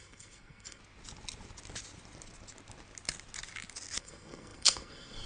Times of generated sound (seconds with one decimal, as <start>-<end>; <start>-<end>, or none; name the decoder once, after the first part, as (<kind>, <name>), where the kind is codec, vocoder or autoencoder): 0.0-0.8 (codec, SNAC); 4.0-5.3